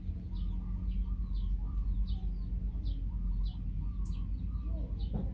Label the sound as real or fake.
real